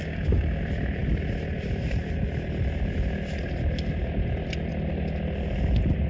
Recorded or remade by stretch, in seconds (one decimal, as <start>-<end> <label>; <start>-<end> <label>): 0.0-0.6 remade; 0.6-6.1 recorded